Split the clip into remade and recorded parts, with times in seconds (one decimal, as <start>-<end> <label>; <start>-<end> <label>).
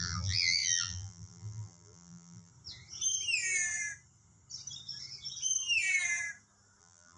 0.0-2.5 remade; 2.5-6.8 recorded; 6.8-7.2 remade